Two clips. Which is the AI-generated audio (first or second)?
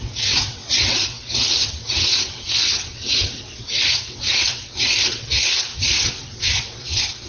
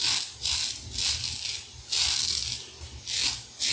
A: first